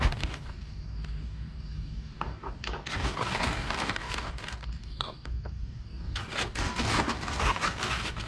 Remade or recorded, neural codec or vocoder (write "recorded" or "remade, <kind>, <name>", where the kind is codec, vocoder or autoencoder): remade, codec, DAC